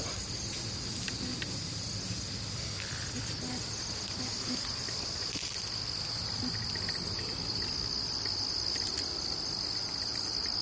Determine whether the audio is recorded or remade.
recorded